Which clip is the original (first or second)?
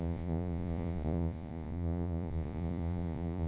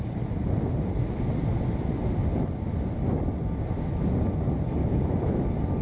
second